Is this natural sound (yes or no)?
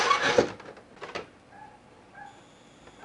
yes